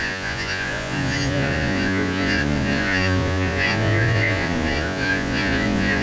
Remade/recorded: remade